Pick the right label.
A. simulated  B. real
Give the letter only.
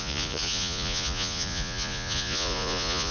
A